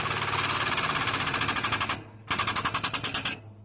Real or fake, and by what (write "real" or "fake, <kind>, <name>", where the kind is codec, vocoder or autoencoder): real